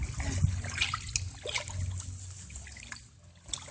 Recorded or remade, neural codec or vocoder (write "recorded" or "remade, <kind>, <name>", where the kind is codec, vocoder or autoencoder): recorded